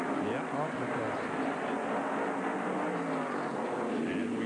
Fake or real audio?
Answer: real